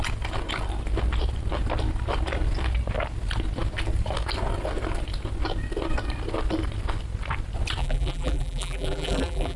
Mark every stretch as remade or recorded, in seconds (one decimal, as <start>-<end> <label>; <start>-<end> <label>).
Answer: 0.0-7.8 recorded; 7.8-9.6 remade